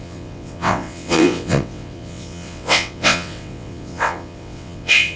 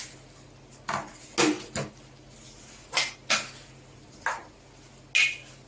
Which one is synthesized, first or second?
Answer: first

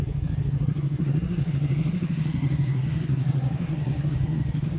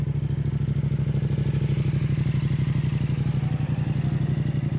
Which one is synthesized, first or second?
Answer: first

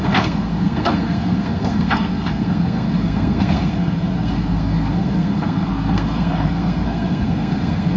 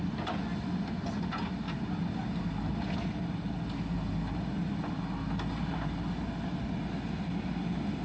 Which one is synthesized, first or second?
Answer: first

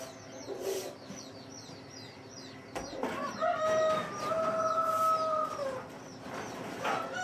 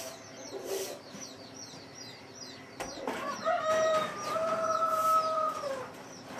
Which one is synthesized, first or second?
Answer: second